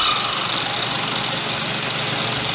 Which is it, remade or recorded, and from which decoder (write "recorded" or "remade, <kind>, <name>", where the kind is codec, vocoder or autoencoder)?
recorded